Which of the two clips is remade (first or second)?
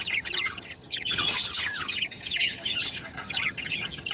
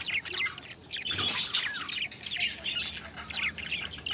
first